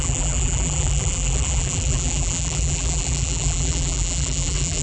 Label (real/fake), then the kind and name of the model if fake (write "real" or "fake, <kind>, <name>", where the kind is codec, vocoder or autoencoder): fake, vocoder, BigVGAN v2